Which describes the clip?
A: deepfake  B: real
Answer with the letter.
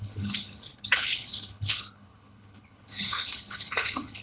A